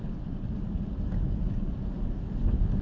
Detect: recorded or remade recorded